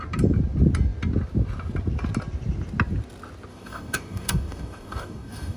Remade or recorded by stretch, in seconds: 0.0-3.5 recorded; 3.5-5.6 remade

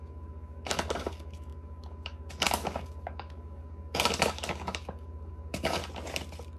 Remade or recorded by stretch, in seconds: 0.0-5.8 remade; 5.8-6.6 recorded